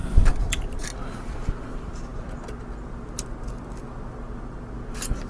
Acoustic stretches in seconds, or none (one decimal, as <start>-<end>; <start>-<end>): 0.8-5.3